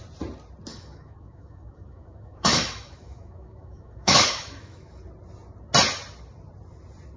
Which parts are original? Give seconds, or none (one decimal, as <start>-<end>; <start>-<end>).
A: 0.0-0.7; 5.0-7.2